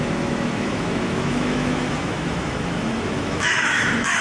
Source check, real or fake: fake